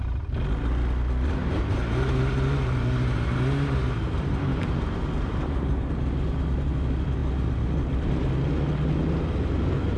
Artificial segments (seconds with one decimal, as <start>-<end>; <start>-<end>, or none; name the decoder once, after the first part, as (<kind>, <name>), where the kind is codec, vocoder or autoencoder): 1.4-6.0 (vocoder, BigVGAN v2)